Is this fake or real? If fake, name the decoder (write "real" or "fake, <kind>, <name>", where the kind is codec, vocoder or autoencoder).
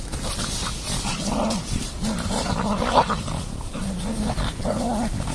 real